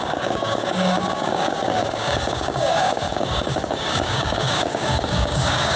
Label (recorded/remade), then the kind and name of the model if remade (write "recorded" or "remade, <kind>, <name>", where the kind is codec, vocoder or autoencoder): remade, codec, DAC